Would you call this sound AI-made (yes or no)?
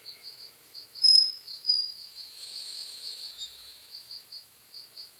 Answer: yes